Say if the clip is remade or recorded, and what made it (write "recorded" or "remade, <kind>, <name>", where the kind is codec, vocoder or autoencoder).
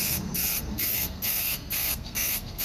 remade, codec, SNAC